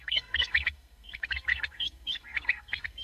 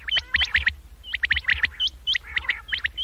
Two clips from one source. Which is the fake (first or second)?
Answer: first